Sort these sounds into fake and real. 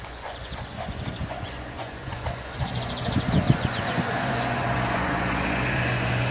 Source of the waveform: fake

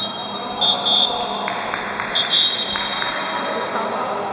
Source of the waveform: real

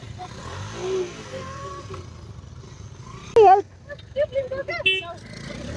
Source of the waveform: real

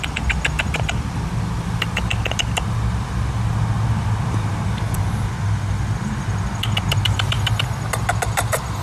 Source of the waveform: real